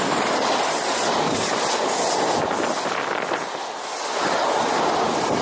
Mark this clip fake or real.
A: real